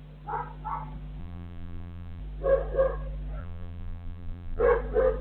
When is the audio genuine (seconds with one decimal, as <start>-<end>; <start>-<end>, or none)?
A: 0.0-1.2; 2.2-3.4; 4.6-5.2

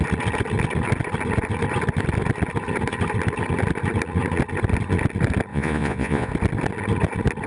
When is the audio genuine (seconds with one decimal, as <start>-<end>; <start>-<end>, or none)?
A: 0.0-5.5; 6.3-7.5

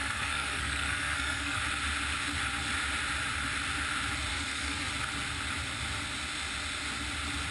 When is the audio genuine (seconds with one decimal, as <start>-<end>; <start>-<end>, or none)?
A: 1.6-4.3; 4.9-7.5

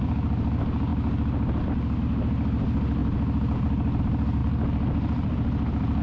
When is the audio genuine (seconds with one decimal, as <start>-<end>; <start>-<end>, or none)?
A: 0.0-3.0; 4.0-4.4

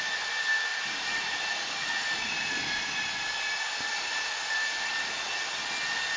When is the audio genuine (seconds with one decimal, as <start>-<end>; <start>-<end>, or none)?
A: 0.0-0.7; 1.5-2.2; 4.9-6.2

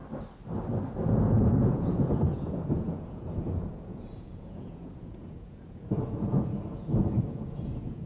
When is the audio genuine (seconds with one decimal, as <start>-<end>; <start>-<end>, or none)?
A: 0.0-1.1